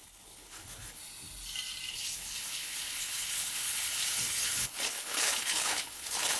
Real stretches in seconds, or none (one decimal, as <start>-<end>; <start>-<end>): 1.0-1.9